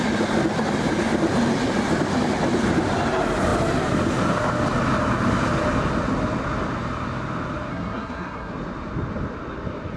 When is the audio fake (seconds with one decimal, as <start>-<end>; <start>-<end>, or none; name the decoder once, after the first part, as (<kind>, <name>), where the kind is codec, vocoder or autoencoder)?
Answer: 7.7-8.5 (codec, SNAC)